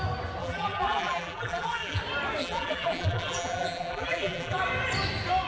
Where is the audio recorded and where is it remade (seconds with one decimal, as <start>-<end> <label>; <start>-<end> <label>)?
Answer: 0.0-0.4 recorded; 0.4-2.0 remade; 2.0-2.4 recorded; 2.4-4.6 remade; 4.6-5.5 recorded